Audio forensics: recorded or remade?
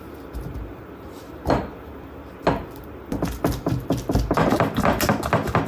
recorded